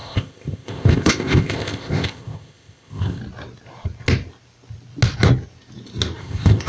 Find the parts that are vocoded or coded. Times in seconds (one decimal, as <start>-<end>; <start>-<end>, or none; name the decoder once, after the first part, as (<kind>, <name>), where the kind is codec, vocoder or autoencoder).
0.0-3.2 (codec, ZipCodec); 6.2-6.7